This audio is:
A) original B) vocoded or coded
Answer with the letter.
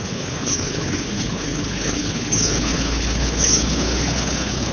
B